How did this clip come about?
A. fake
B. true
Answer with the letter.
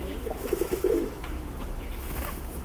A